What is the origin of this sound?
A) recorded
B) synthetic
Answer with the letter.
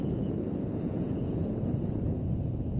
B